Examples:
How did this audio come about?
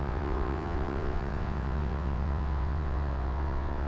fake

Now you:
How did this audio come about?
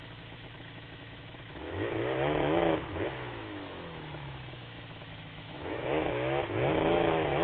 fake